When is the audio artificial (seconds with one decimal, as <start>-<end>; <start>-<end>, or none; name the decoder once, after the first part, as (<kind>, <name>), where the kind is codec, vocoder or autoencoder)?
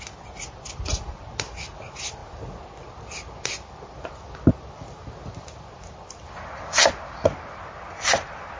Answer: none